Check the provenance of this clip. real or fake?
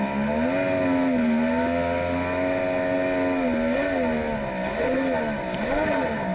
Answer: real